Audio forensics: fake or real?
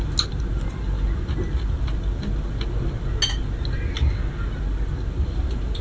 real